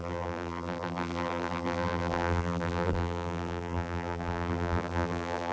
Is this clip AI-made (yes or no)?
yes